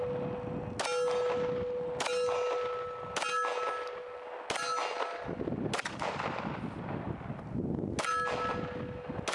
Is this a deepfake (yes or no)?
no